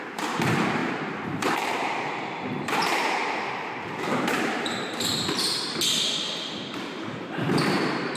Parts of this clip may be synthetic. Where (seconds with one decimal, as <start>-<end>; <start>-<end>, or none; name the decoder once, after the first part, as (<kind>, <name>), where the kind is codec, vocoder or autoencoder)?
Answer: 0.0-5.1 (vocoder, BigVGAN v2)